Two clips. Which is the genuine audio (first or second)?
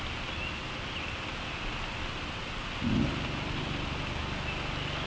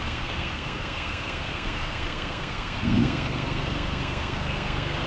first